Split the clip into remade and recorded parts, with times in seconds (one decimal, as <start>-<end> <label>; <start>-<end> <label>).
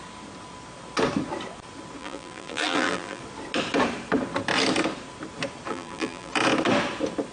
0.0-2.0 recorded; 2.0-3.2 remade; 3.2-5.7 recorded; 5.7-6.3 remade; 6.3-7.3 recorded